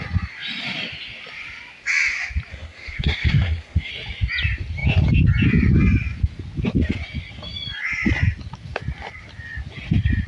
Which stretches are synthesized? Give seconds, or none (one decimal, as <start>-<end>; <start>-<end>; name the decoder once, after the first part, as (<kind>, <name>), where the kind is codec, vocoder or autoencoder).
2.5-3.9 (codec, SNAC)